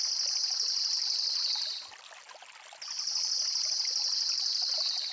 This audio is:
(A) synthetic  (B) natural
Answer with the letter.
B